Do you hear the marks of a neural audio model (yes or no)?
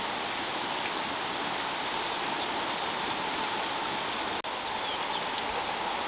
no